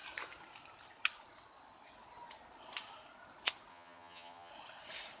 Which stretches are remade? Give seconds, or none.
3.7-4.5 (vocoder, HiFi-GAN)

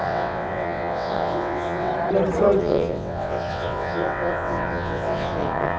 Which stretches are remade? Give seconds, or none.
0.0-1.9 (vocoder, WaveNeXt); 2.6-5.8

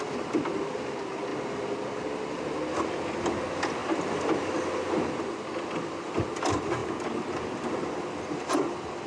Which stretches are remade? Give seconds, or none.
none

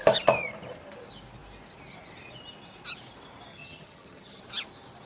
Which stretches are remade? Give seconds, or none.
3.5-4.4 (vocoder, HiFi-GAN)

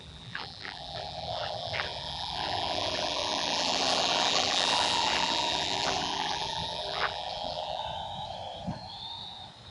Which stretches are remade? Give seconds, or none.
0.0-7.8 (vocoder, BigVGAN v2)

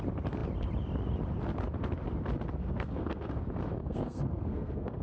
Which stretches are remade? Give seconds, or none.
2.6-3.4 (codec, SNAC); 3.8-5.0

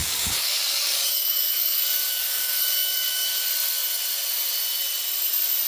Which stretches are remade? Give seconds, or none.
0.0-3.4 (codec, DAC)